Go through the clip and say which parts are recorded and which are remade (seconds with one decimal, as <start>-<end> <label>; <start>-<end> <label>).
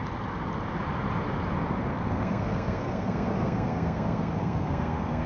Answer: 0.0-1.9 recorded; 1.9-5.3 remade